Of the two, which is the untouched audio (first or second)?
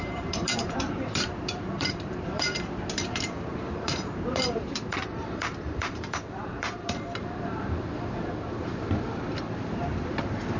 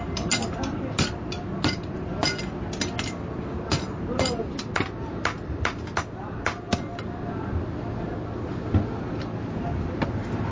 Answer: second